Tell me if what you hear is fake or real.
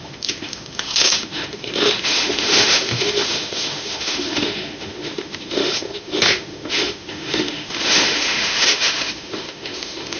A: fake